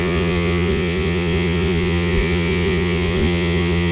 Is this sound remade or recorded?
remade